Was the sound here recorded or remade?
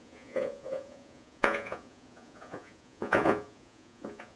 remade